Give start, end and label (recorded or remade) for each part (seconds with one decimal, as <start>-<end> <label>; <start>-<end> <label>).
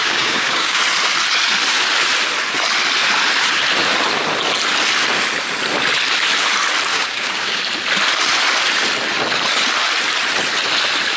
0.0-0.8 remade; 0.8-6.9 recorded; 6.9-7.6 remade; 7.6-11.2 recorded